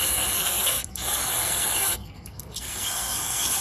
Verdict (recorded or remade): remade